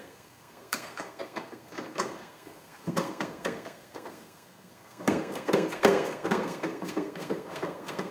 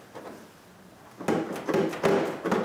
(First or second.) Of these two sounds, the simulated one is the first